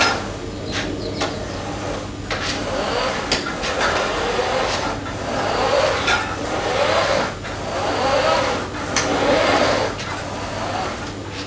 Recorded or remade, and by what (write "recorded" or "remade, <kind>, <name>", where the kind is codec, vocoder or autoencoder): recorded